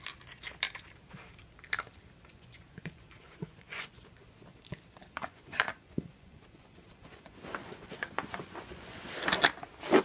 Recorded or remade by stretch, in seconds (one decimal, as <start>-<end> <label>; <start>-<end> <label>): 0.0-2.3 recorded; 2.3-4.0 remade; 4.0-5.0 recorded; 5.0-9.1 remade; 9.1-10.0 recorded

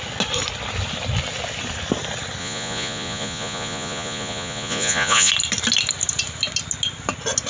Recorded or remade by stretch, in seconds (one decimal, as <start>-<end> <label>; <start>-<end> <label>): 0.0-2.4 recorded; 2.4-5.3 remade; 5.3-7.5 recorded

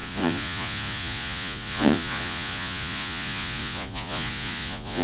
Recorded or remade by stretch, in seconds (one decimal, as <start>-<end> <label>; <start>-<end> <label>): 0.0-5.0 remade

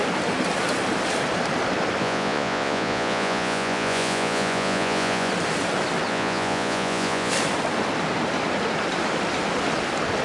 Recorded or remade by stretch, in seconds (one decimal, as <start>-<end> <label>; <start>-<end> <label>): 0.0-2.0 recorded; 2.0-5.3 remade; 5.3-6.1 recorded; 6.1-7.3 remade; 7.3-10.2 recorded

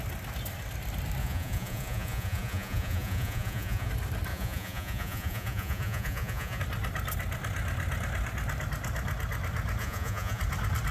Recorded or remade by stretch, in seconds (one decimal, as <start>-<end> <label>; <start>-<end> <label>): 0.0-1.2 recorded; 1.2-3.9 remade; 3.9-4.3 recorded; 4.3-6.6 remade; 6.6-9.8 recorded; 9.8-10.4 remade; 10.4-10.9 recorded

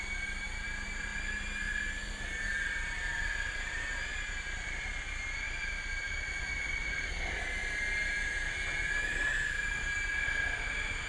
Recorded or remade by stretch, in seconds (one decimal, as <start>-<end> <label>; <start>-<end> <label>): 0.0-6.0 recorded; 6.0-7.4 remade; 7.4-11.1 recorded

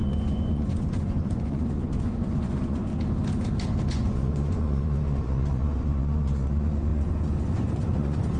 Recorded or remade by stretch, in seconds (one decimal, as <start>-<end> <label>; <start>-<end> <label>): 0.0-2.9 remade; 2.9-3.9 recorded; 3.9-8.4 remade

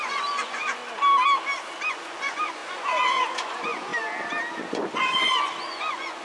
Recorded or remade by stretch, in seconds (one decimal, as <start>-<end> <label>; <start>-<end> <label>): 0.0-0.8 remade; 0.8-1.9 recorded; 1.9-3.9 remade; 3.9-4.7 recorded; 4.7-6.2 remade